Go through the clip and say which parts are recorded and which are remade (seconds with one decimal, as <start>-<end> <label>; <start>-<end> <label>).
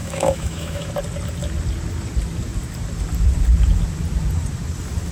0.0-0.9 remade; 0.9-5.1 recorded